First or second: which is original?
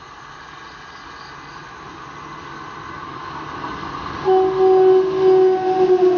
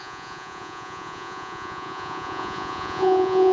first